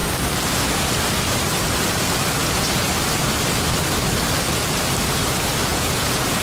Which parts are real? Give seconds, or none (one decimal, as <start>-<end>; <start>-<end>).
0.0-2.4; 2.9-5.7